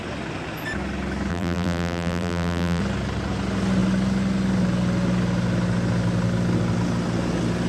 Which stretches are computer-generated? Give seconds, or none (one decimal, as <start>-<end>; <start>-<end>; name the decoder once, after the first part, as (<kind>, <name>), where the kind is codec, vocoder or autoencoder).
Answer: 1.3-2.8 (vocoder, BigVGAN v2)